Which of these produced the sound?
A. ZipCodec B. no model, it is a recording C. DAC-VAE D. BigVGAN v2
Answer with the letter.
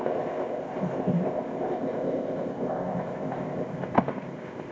A